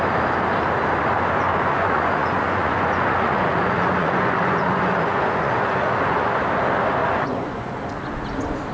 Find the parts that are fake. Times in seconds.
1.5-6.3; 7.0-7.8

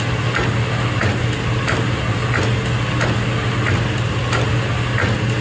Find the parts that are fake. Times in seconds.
none

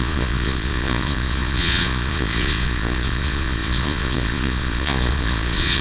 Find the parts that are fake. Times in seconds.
0.0-5.8

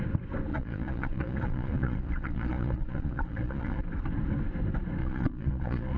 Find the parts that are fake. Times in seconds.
0.5-3.8; 5.0-6.0

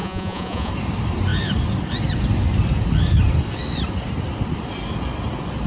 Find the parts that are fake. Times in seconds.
0.0-0.7

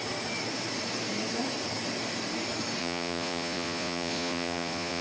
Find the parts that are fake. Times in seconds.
2.8-5.0

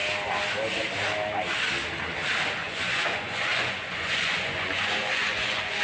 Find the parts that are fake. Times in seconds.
2.6-5.8